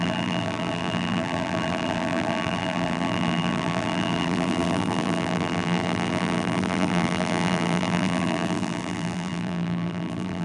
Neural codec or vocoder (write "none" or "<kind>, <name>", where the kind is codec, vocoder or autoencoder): vocoder, BigVGAN v2